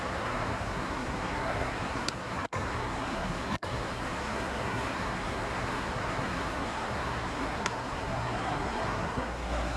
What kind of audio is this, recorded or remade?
remade